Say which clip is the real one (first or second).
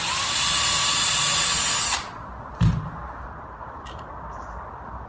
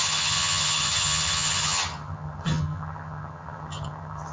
first